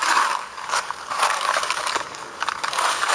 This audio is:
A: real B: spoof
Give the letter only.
B